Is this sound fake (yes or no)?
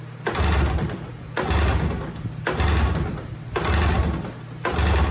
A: no